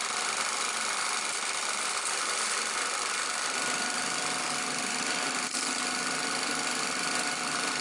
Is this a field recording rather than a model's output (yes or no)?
no